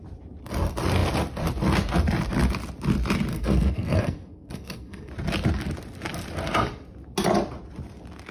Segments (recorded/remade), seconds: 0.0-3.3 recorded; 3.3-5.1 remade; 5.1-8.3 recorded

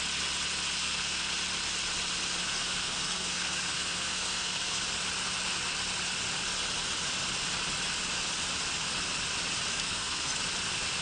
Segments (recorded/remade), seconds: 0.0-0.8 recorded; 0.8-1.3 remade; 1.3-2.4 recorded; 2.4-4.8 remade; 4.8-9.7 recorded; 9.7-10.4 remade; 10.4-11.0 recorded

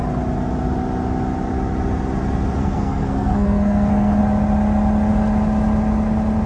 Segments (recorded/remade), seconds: 0.0-2.6 recorded; 2.6-4.2 remade; 4.2-6.5 recorded

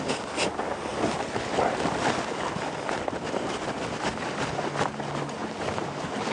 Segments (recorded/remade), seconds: 0.0-0.9 recorded; 0.9-4.7 remade; 4.7-6.3 recorded